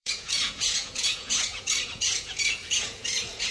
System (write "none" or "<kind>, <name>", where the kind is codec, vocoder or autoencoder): vocoder, Vocos